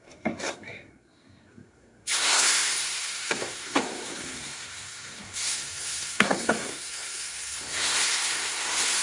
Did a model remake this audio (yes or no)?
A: yes